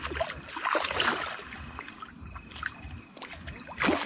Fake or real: real